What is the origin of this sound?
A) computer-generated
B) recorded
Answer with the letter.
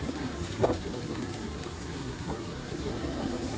A